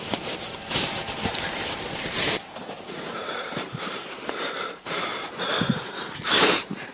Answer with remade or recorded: remade